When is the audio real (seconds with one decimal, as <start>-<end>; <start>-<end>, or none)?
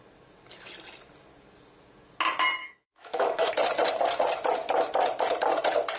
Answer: 0.0-2.6; 3.5-6.0